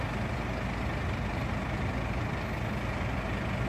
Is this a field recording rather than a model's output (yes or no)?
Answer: yes